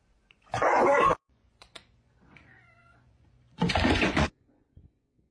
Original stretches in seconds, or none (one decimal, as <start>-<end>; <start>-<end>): none